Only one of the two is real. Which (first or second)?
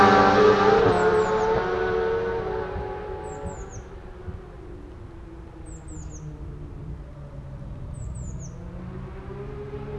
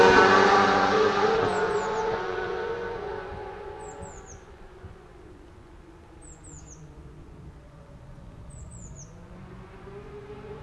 first